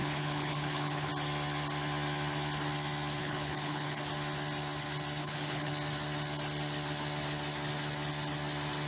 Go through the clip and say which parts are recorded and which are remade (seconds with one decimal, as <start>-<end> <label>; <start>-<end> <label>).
0.0-1.1 remade; 1.1-3.2 recorded; 3.2-4.1 remade; 4.1-5.2 recorded; 5.2-5.7 remade; 5.7-8.9 recorded